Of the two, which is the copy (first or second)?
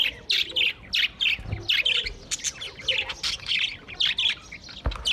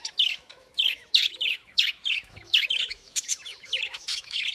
second